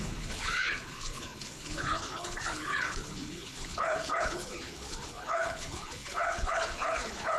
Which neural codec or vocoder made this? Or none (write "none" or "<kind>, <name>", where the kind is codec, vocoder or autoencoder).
codec, HILCodec